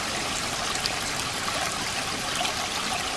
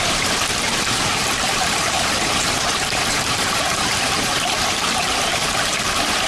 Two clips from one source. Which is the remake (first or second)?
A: second